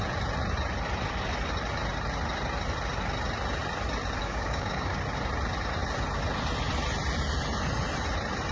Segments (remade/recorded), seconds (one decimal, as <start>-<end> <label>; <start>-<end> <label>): 0.0-4.2 recorded; 4.2-5.0 remade; 5.0-8.5 recorded